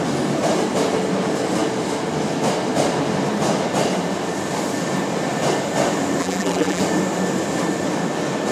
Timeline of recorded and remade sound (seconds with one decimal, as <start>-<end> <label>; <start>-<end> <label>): 0.0-6.2 recorded; 6.2-6.8 remade; 6.8-8.5 recorded